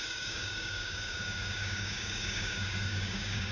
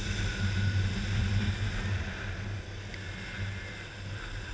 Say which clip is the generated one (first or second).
first